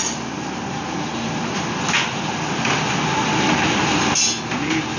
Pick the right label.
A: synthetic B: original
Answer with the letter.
B